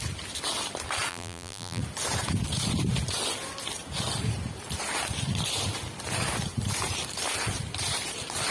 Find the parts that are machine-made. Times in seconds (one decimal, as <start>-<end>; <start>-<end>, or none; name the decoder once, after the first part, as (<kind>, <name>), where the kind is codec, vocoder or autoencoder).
1.1-1.8 (vocoder, BigVGAN v2)